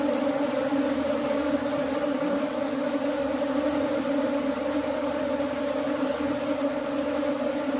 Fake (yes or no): no